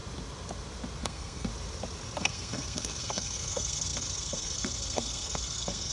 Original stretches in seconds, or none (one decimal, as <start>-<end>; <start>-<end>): 0.0-1.0; 1.5-2.2